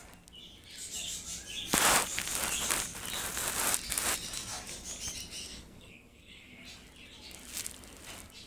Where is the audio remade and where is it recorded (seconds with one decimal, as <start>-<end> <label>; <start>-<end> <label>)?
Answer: 0.0-5.4 recorded; 5.4-6.6 remade; 6.6-8.5 recorded